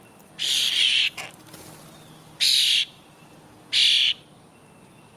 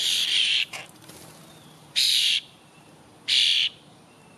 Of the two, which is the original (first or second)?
first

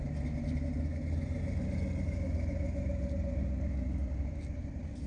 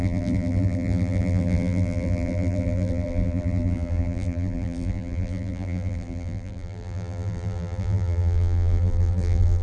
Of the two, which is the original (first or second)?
first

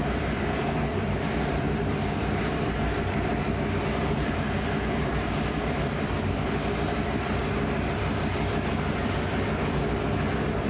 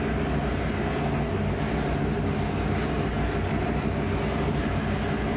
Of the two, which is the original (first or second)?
second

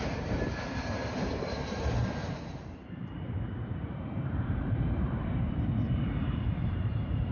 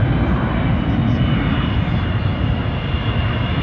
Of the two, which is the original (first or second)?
second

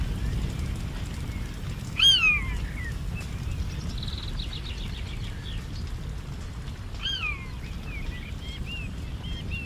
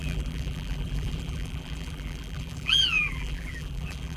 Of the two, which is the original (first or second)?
first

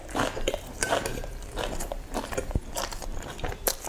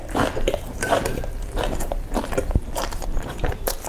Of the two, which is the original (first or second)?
first